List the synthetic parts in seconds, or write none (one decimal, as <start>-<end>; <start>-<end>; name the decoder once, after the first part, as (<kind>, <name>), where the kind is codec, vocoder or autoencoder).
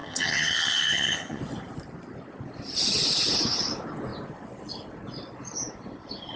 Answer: 0.0-1.4 (vocoder, HiFi-GAN)